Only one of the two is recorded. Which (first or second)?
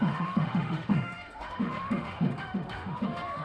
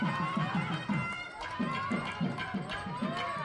second